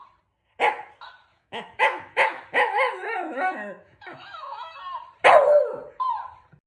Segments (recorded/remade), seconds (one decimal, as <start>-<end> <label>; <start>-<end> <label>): 0.0-1.3 recorded; 1.3-4.8 remade; 4.8-6.7 recorded